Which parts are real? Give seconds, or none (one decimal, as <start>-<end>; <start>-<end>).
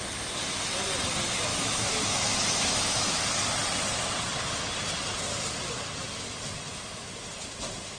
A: 0.0-1.5; 3.2-8.0